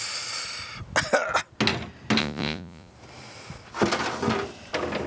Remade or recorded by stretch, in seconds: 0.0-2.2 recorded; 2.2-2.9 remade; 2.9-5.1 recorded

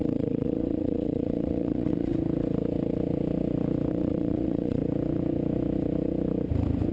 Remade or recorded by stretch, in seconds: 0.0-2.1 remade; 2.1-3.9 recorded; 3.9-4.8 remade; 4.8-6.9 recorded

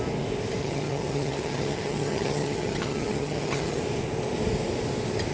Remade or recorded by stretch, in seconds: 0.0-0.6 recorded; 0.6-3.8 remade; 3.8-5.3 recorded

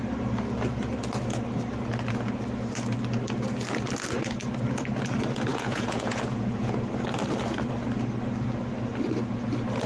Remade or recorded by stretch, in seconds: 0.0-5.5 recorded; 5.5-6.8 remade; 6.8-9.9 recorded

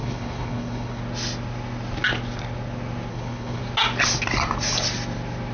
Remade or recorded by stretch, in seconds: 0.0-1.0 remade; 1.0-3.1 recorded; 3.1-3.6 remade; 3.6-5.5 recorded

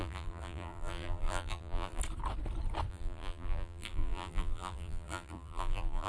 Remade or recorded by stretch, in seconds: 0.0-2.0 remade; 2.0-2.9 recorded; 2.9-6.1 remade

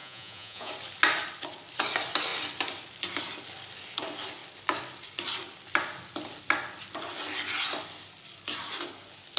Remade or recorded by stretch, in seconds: 0.0-0.7 remade; 0.7-9.4 recorded